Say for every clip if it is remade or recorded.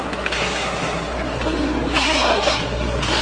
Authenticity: remade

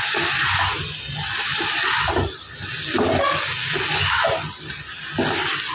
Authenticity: recorded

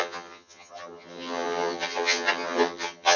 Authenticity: remade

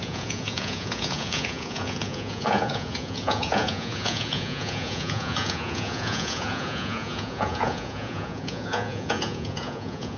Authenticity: remade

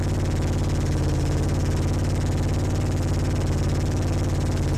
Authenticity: recorded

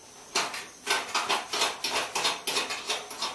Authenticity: recorded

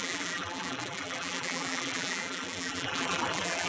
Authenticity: remade